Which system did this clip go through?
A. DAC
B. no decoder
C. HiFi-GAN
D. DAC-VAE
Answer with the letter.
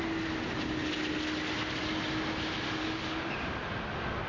B